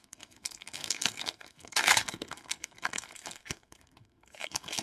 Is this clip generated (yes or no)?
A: yes